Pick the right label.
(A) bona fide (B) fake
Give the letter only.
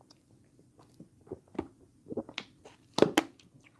A